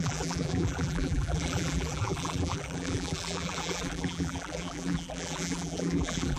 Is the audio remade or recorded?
remade